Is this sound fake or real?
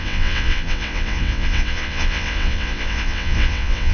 fake